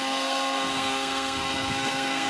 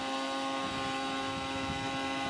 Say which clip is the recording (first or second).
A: second